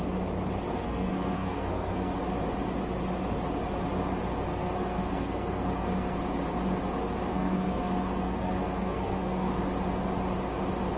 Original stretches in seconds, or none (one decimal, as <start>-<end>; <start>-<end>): 0.0-0.7; 2.2-4.5; 6.2-7.3; 9.6-11.0